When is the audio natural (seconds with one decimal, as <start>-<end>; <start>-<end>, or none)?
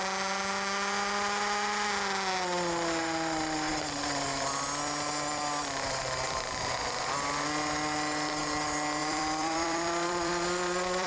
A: 0.0-9.0